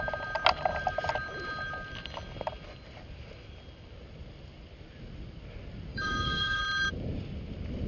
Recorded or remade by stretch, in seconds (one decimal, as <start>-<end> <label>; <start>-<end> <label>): 0.0-5.9 recorded; 5.9-6.6 remade; 6.6-7.9 recorded

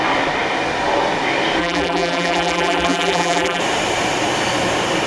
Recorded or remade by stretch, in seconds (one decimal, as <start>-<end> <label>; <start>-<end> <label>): 0.0-1.6 recorded; 1.6-3.6 remade; 3.6-5.1 recorded

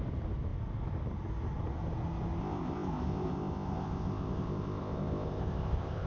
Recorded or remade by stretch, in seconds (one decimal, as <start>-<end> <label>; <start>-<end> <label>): 0.0-2.4 recorded; 2.4-6.1 remade

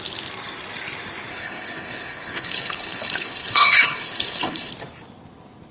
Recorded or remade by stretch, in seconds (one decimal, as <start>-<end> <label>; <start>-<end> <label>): 0.0-1.3 recorded; 1.3-4.7 remade; 4.7-5.7 recorded

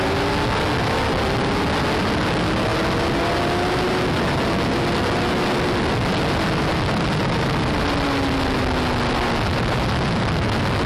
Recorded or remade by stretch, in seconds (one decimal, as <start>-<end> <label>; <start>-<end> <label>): 0.0-10.9 recorded

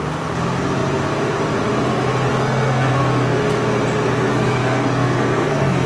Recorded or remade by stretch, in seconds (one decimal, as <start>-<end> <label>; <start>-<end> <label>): 0.0-2.3 recorded; 2.3-3.4 remade; 3.4-4.3 recorded; 4.3-5.9 remade

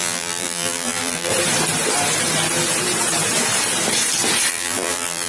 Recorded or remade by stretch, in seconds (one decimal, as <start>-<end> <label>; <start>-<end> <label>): 0.0-1.3 remade; 1.3-4.5 recorded; 4.5-5.3 remade

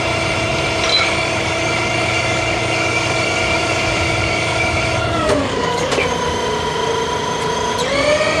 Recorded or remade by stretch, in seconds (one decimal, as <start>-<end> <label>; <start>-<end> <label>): 0.0-0.9 recorded; 0.9-5.9 remade; 5.9-8.4 recorded